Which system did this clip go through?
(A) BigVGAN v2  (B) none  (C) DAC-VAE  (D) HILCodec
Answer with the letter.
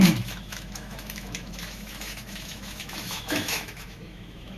C